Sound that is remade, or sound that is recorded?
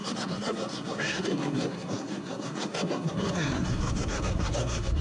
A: remade